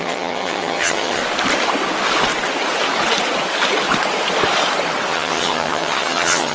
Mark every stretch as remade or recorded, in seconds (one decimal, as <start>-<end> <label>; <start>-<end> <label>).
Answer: 0.0-1.2 remade; 1.2-5.1 recorded; 5.1-6.5 remade